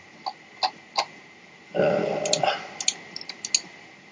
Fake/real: real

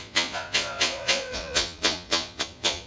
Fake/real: fake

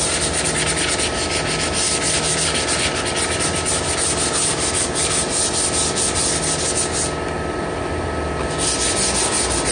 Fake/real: real